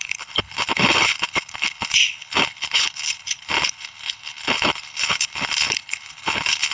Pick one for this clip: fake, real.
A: fake